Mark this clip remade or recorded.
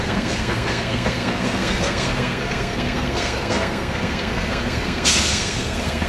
remade